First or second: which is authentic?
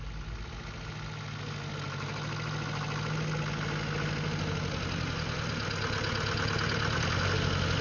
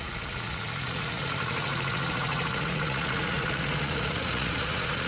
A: first